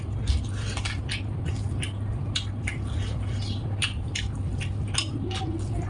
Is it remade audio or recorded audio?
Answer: recorded